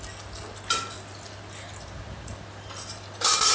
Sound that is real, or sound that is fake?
real